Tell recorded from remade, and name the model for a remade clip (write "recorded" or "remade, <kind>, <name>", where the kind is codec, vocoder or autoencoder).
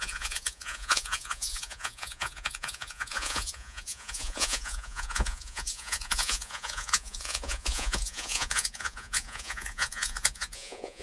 remade, vocoder, Vocos